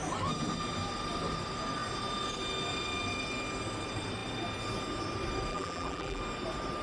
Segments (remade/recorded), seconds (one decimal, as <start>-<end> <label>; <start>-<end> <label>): 0.0-5.5 recorded; 5.5-6.2 remade; 6.2-6.8 recorded